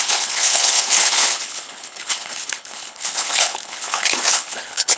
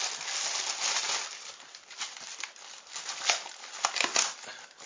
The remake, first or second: first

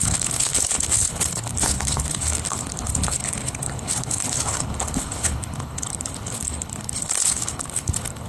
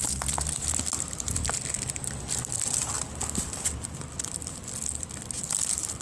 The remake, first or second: first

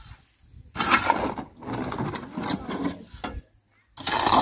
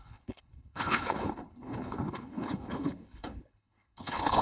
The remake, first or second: second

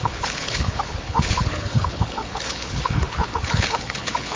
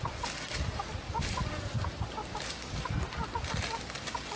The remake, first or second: first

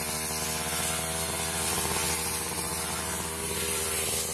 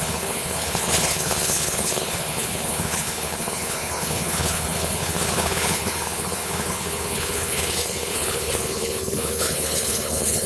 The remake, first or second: second